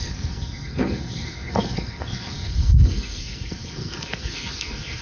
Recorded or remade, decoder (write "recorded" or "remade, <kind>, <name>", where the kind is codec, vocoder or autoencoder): remade, codec, SNAC